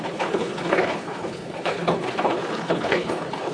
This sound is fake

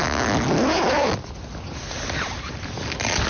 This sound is real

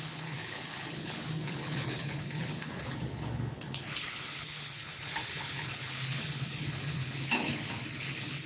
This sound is fake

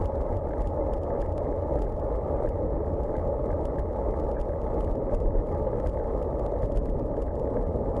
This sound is real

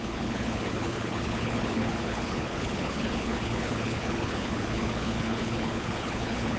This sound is fake